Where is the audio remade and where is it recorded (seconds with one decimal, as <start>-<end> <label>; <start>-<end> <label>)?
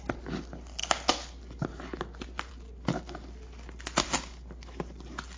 0.0-5.4 recorded